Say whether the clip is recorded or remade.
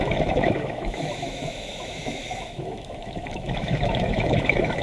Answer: remade